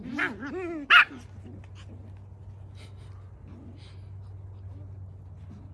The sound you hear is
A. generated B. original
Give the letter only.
B